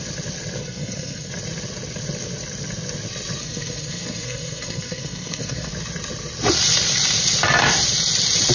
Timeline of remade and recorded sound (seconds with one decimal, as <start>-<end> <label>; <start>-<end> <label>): 0.0-0.6 recorded; 0.6-1.3 remade; 1.3-3.4 recorded; 3.4-5.7 remade; 5.7-8.5 recorded